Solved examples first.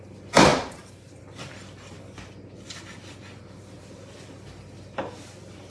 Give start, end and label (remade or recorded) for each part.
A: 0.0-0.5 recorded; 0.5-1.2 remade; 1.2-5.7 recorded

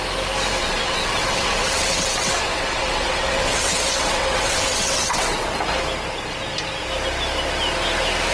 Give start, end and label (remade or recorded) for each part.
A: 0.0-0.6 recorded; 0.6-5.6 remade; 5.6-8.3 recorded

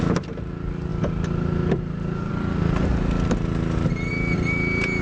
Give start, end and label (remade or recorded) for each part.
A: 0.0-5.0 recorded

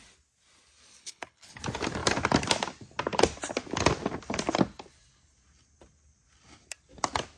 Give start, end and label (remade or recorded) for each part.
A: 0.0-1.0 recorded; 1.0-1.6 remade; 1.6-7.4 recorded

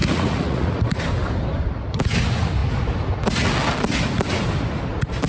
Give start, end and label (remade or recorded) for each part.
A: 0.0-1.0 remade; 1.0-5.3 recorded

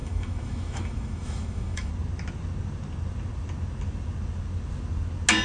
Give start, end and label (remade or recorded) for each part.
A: 0.0-1.9 remade; 1.9-5.4 recorded

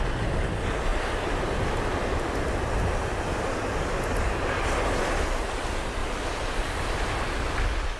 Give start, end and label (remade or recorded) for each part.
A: 0.0-0.9 recorded; 0.9-5.1 remade; 5.1-6.0 recorded; 6.0-7.6 remade; 7.6-8.0 recorded

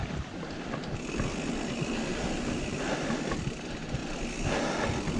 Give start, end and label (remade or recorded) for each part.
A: 0.0-4.0 remade; 4.0-5.2 recorded